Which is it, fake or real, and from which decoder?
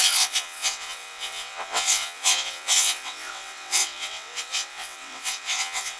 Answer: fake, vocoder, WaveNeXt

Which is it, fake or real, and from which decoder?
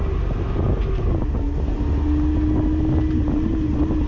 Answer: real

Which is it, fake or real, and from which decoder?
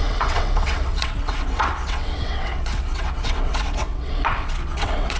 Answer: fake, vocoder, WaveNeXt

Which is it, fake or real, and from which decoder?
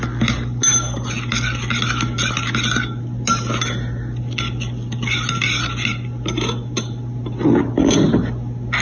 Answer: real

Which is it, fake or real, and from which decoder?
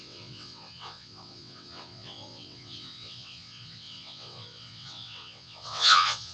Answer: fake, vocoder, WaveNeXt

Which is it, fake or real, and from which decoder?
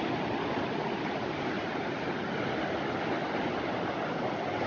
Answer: real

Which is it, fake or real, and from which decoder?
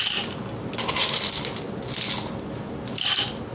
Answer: real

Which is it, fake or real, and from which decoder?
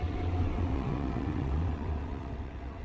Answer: fake, vocoder, WaveNeXt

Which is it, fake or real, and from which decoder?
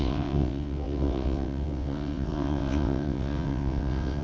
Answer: fake, vocoder, WaveNeXt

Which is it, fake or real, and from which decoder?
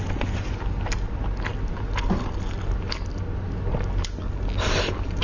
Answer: real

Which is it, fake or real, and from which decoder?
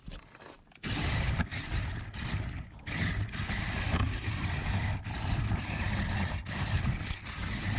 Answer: real